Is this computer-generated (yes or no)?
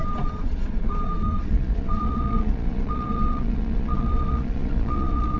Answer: yes